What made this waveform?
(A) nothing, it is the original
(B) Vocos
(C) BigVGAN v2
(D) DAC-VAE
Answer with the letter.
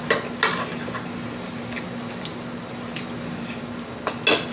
A